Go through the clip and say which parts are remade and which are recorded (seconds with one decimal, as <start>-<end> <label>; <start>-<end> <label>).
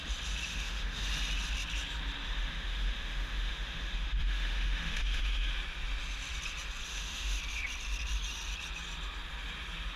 0.0-0.5 recorded; 0.5-1.1 remade; 1.1-2.2 recorded; 2.2-5.5 remade; 5.5-6.9 recorded; 6.9-7.4 remade; 7.4-10.0 recorded